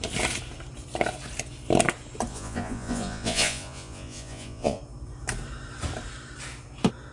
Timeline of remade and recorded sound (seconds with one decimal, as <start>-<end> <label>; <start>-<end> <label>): 0.0-2.3 recorded; 2.3-4.8 remade; 4.8-7.1 recorded